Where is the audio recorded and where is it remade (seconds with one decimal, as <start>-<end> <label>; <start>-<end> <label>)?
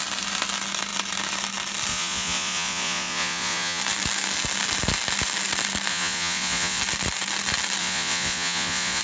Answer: 0.0-1.9 recorded; 1.9-3.8 remade; 3.8-5.9 recorded; 5.9-6.8 remade; 6.8-7.8 recorded; 7.8-9.0 remade